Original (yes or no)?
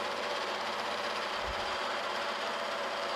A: no